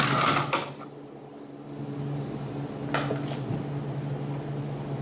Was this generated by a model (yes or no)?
no